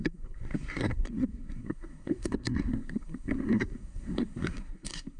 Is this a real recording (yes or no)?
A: no